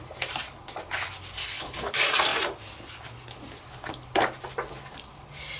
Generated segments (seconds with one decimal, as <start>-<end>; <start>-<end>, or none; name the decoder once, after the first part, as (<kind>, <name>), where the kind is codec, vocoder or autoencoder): 1.4-1.9 (codec, HILCodec)

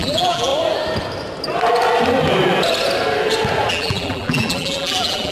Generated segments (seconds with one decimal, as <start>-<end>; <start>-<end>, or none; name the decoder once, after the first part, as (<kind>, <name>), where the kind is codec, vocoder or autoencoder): 0.0-0.5 (vocoder, BigVGAN v2); 3.7-5.3